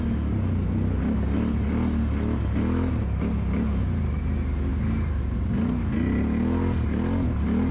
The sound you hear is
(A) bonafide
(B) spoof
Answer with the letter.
A